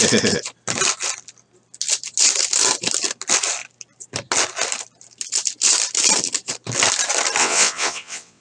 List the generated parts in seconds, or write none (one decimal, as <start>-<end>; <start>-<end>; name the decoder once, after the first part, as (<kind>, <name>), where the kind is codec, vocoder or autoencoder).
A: 7.4-8.4 (vocoder, WaveNeXt)